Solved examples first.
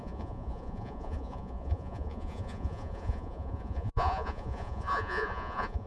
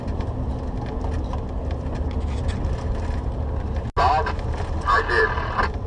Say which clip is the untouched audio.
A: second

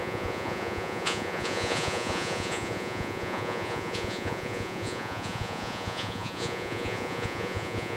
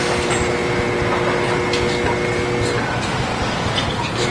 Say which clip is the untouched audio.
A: second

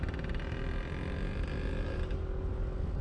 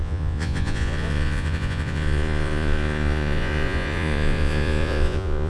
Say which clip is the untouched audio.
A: first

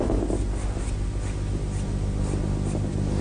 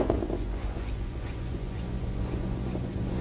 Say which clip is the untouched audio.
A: first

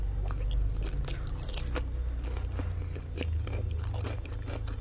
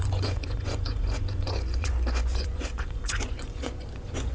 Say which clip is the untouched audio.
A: first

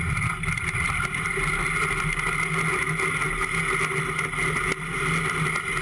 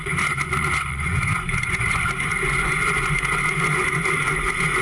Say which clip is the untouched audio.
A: first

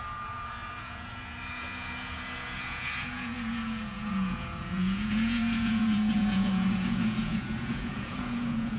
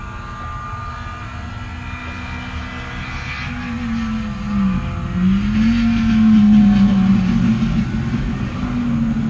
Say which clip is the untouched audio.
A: second